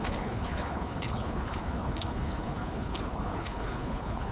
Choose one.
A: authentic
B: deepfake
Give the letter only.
B